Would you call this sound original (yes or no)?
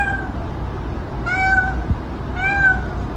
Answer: yes